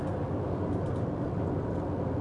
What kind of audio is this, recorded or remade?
recorded